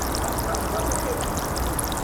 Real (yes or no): yes